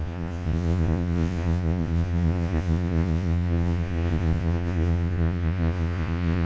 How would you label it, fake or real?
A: fake